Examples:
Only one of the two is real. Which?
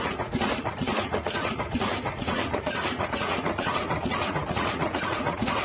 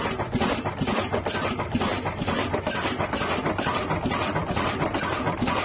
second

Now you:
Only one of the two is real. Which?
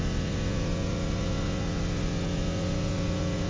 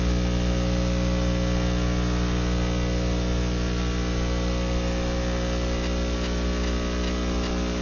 second